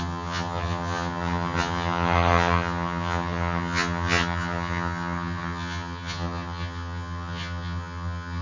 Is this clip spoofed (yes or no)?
yes